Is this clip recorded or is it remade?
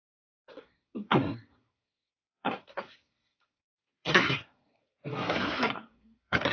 remade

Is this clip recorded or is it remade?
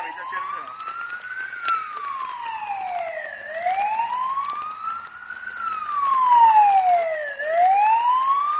recorded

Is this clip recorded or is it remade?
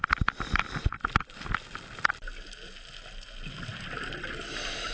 recorded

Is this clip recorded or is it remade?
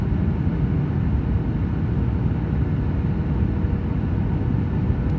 recorded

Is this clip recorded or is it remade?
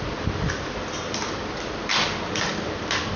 recorded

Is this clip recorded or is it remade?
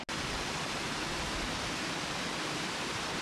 recorded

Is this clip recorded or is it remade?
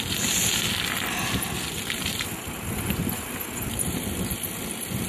recorded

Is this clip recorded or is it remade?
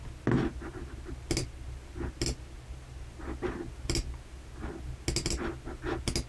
recorded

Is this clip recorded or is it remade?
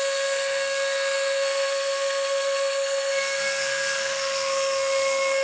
remade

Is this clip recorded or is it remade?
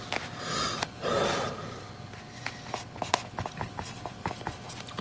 recorded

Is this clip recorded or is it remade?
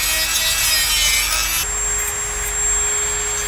recorded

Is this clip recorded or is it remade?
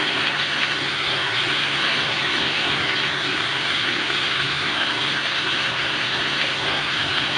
remade